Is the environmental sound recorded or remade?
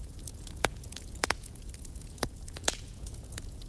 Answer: remade